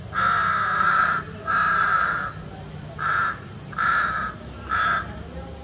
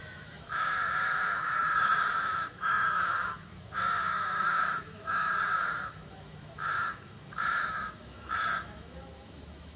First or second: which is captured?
first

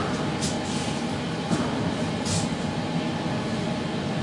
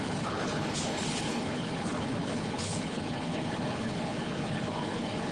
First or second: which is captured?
first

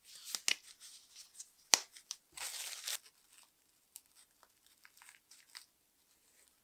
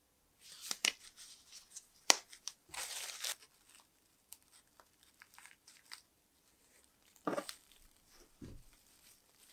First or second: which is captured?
first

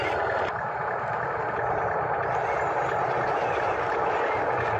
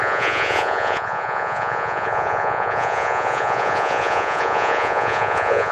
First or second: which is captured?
first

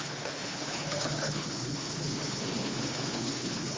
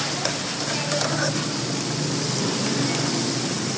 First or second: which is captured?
second